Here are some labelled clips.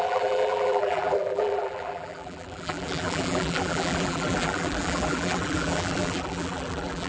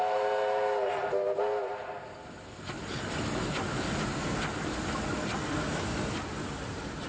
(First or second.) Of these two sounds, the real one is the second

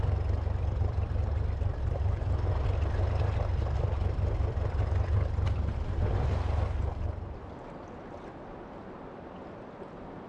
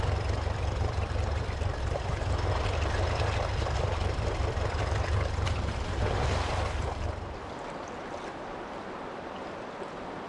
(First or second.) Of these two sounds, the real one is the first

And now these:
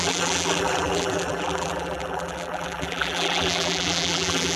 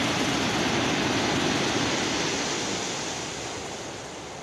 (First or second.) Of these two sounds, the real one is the second